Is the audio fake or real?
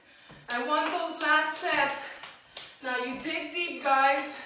real